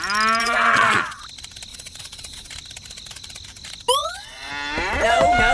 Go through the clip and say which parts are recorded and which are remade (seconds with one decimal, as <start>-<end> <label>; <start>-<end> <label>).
0.0-0.4 recorded; 0.4-1.2 remade; 1.2-1.7 recorded; 1.7-2.5 remade; 2.5-4.0 recorded; 4.0-4.5 remade; 4.5-5.5 recorded